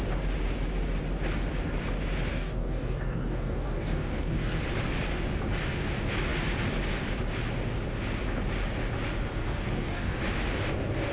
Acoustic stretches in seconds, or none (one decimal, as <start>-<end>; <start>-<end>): 0.0-2.3; 4.6-9.4; 10.2-11.1